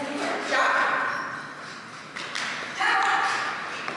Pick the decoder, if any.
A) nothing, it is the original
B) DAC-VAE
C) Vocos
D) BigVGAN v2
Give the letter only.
A